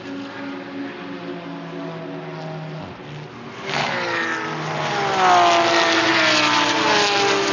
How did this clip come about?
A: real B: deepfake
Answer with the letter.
A